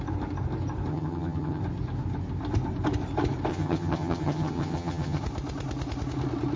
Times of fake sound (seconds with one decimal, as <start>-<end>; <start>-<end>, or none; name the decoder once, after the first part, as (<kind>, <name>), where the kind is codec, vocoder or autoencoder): 0.9-1.6 (vocoder, HiFi-GAN); 3.5-5.2